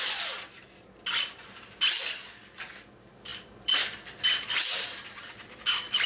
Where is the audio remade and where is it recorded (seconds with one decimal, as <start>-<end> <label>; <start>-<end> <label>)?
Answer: 0.0-6.1 recorded